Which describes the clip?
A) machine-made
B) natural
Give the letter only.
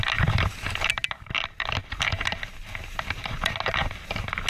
B